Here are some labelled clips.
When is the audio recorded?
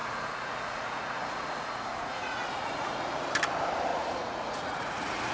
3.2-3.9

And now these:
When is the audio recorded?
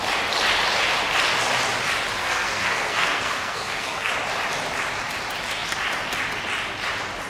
0.0-2.2; 4.1-7.3